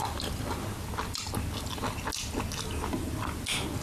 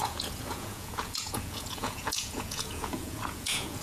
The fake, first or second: second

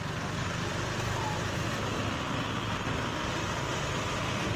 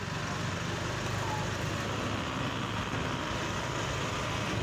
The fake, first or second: first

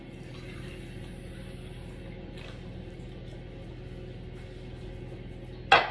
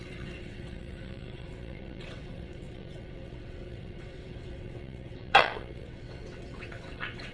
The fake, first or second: second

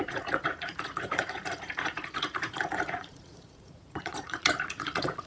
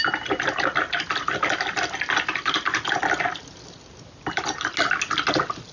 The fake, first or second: first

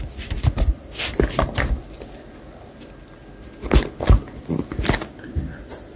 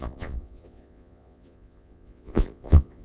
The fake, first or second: second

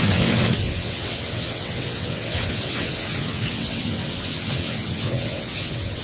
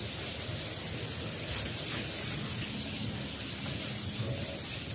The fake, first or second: first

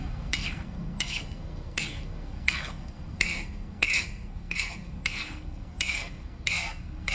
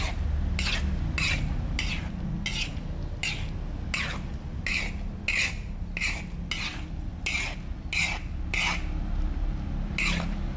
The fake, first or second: first